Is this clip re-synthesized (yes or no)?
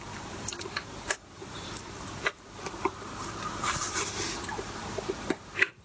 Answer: yes